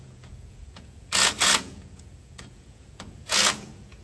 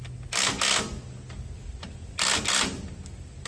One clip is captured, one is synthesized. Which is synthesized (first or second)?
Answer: first